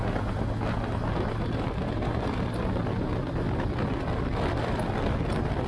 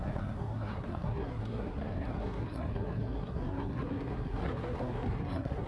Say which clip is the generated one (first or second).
second